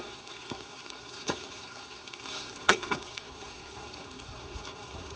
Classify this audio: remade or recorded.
remade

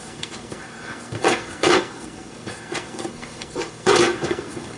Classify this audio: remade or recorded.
remade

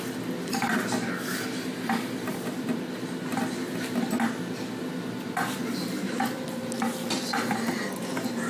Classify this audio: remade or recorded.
recorded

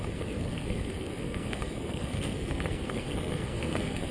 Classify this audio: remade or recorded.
remade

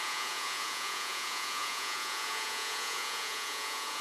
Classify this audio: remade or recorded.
remade